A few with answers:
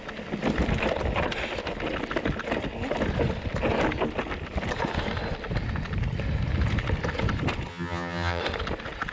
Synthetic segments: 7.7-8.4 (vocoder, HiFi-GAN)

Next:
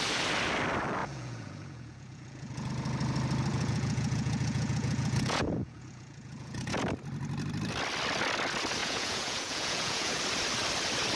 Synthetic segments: 1.0-2.7 (vocoder, Vocos); 3.5-6.8; 8.8-10.2

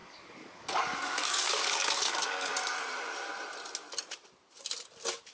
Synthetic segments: 0.0-2.5 (codec, DAC)

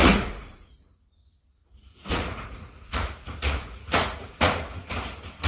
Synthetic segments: 0.0-0.6 (vocoder, Vocos); 1.6-4.9

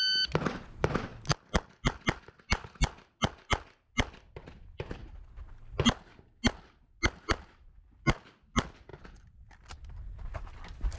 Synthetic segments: none

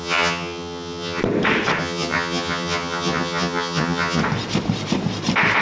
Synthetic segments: 0.0-1.2 (vocoder, HiFi-GAN); 1.8-4.2

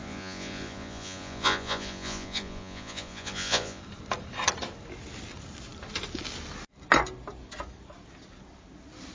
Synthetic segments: 0.0-3.8 (vocoder, Vocos)

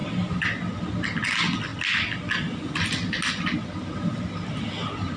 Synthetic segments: none